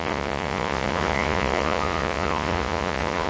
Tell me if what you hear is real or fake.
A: fake